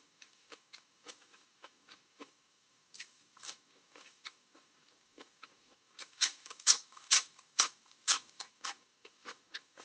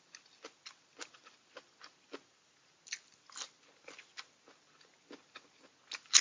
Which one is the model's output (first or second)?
first